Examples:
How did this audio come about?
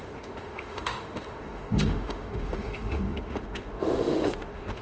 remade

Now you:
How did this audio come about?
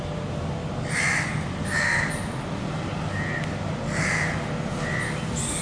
recorded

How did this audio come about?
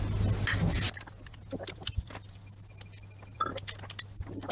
recorded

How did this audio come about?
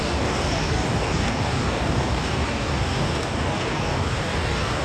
remade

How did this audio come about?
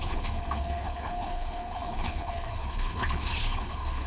remade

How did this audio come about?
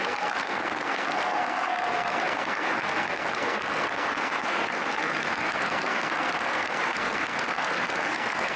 remade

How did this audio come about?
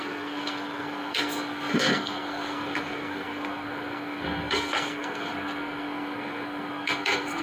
remade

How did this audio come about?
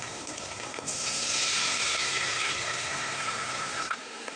remade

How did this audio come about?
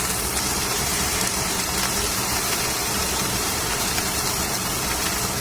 remade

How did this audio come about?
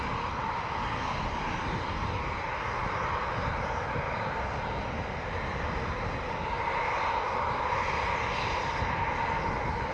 recorded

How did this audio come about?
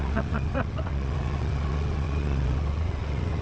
remade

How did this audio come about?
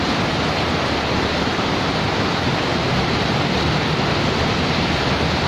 recorded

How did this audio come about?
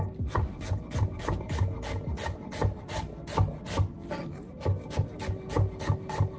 recorded